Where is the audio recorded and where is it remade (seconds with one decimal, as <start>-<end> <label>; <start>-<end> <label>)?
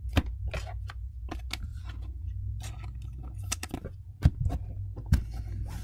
0.0-5.8 recorded